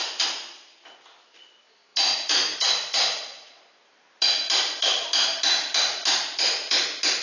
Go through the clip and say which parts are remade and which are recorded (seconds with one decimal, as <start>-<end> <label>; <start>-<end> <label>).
0.0-7.2 recorded